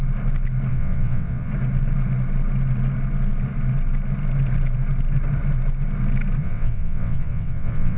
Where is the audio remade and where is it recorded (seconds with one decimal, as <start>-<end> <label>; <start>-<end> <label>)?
0.0-0.7 recorded; 0.7-1.5 remade; 1.5-6.4 recorded; 6.4-8.0 remade